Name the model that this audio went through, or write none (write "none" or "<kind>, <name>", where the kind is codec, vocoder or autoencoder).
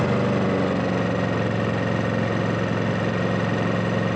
none